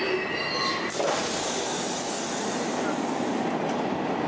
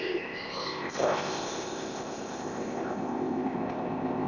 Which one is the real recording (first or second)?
first